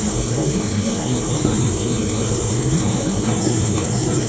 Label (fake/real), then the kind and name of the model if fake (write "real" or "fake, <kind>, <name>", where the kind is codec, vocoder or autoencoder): fake, codec, SNAC